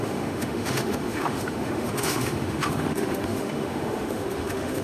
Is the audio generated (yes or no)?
yes